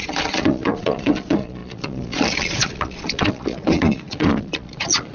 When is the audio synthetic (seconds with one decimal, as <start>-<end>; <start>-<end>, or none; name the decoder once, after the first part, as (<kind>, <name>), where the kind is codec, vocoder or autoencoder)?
0.0-5.1 (vocoder, Vocos)